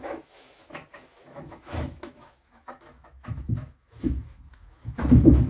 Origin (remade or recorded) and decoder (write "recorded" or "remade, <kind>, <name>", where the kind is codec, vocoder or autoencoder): remade, autoencoder, DAC-VAE